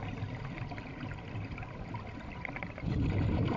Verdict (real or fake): real